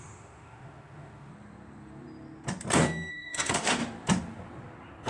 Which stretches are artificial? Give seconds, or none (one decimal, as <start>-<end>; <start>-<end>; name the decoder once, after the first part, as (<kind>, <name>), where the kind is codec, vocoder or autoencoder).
0.0-1.3 (autoencoder, DAC-VAE); 3.1-3.8